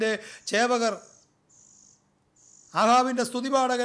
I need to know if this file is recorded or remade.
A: recorded